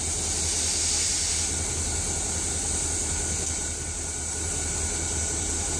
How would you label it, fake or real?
real